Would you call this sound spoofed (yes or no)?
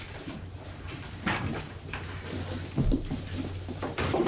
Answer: no